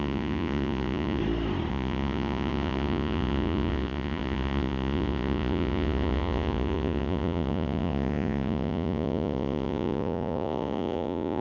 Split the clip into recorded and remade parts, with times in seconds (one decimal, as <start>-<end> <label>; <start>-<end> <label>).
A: 0.0-1.2 remade; 1.2-1.7 recorded; 1.7-11.4 remade